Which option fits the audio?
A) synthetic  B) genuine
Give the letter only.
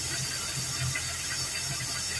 B